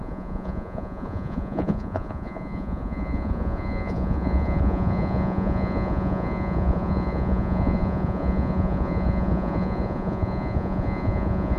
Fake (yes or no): yes